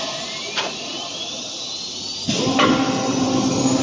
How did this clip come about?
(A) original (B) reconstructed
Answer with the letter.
A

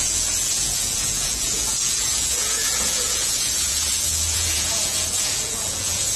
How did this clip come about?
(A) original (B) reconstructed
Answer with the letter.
B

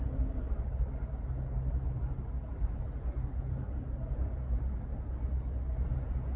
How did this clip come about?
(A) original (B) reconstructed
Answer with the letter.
A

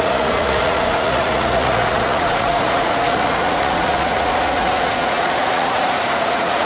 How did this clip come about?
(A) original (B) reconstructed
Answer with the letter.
B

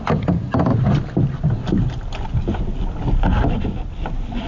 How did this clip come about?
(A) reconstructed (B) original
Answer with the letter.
B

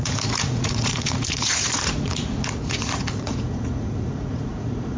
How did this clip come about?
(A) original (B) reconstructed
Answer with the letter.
B